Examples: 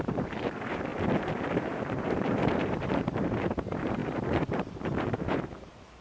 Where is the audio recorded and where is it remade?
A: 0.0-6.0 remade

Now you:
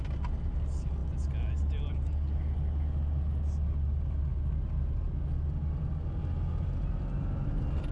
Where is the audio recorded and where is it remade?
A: 0.0-7.9 recorded

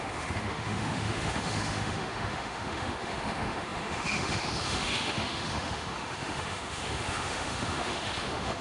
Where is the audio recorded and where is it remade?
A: 0.0-8.6 remade

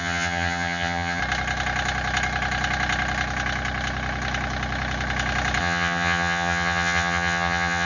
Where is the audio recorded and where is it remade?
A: 0.0-1.2 remade; 1.2-5.6 recorded; 5.6-7.9 remade